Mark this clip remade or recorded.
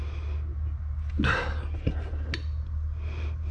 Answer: recorded